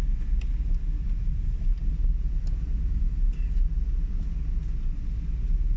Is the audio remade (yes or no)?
no